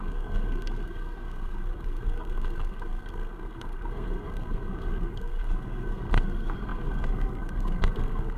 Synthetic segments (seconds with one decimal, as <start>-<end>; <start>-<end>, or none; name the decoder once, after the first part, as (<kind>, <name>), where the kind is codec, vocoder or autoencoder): 0.0-8.4 (codec, SNAC)